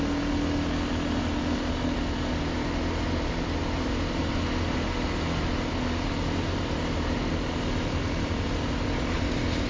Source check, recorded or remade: recorded